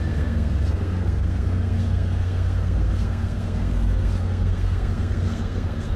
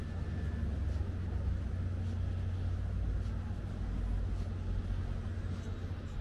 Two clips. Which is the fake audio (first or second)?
first